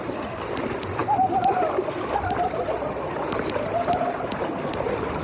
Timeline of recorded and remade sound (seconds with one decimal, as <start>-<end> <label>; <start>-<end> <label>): 0.0-1.0 recorded; 1.0-4.1 remade; 4.1-5.2 recorded